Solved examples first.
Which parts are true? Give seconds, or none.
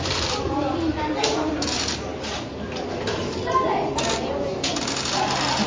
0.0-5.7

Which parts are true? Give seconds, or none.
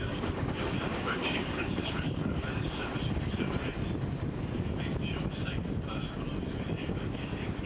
2.9-6.7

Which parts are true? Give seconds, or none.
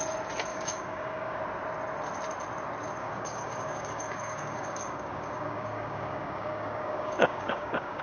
0.0-0.5; 1.4-3.0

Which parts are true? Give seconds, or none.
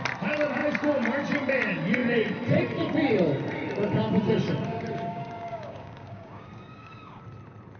0.0-4.7; 7.2-7.8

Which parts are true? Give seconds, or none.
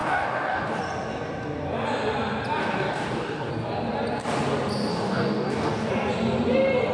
0.8-2.6; 3.5-4.9; 5.9-6.9